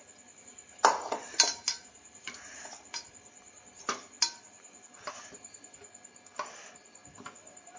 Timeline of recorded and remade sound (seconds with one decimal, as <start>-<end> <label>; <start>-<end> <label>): 0.0-7.8 recorded

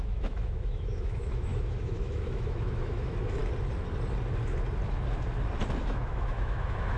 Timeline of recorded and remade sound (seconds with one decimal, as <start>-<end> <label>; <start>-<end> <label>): 0.0-3.4 remade; 3.4-5.8 recorded; 5.8-7.0 remade

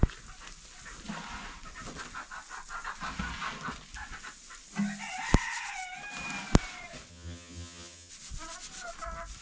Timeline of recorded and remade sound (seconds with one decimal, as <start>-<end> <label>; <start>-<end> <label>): 0.0-7.1 recorded; 7.1-8.1 remade; 8.1-9.4 recorded